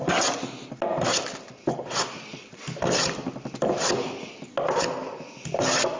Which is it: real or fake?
real